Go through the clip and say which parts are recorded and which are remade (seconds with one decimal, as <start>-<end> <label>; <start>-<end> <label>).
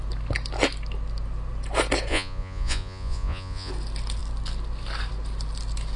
0.0-2.1 recorded; 2.1-3.7 remade; 3.7-6.0 recorded